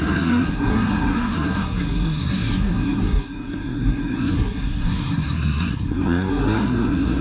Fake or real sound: fake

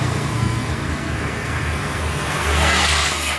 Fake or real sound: fake